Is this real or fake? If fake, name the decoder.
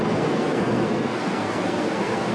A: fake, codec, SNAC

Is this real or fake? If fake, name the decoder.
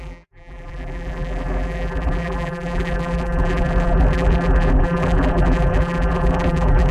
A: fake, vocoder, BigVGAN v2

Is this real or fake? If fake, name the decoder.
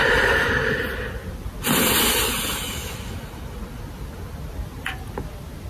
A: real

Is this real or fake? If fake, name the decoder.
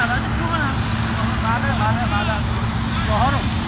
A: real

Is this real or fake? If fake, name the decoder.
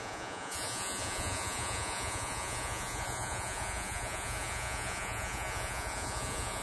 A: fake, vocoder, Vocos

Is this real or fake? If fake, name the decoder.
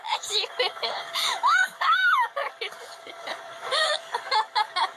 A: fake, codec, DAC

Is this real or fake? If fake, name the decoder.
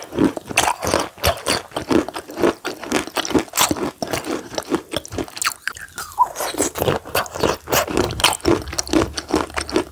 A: real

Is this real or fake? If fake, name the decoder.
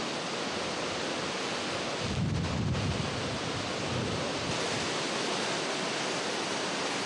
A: real